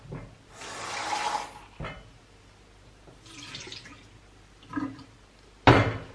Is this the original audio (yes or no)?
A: yes